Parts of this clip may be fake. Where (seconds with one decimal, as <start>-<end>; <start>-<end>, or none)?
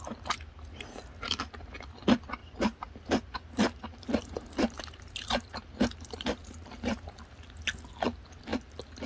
2.4-7.2; 8.5-9.1